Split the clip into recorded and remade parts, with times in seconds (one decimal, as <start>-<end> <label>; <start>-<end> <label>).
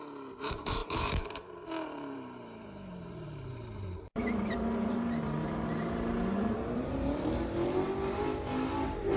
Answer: 0.0-9.2 remade